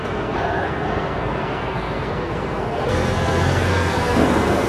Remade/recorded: remade